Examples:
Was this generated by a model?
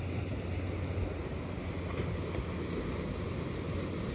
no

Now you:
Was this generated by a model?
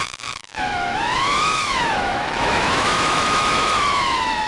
yes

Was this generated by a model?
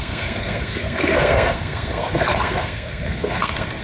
yes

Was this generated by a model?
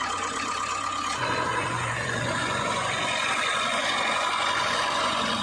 yes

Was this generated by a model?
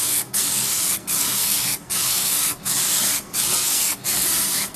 yes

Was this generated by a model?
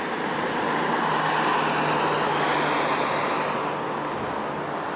no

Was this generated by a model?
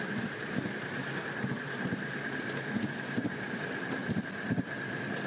no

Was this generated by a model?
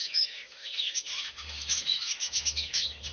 yes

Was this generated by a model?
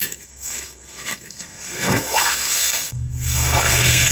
yes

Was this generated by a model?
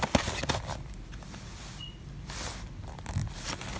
no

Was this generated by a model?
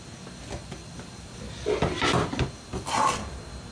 no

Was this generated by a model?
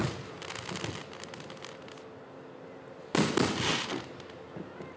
no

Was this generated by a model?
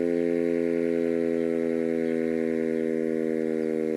no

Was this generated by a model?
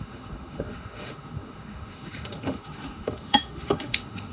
yes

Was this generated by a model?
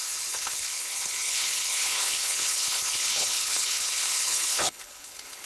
yes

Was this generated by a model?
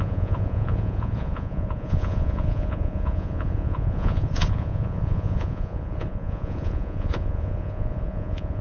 yes